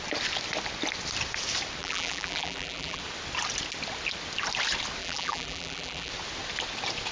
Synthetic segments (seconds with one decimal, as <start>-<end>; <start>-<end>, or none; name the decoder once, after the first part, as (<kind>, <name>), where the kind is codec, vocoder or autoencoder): 1.8-3.0 (vocoder, BigVGAN v2); 5.0-6.1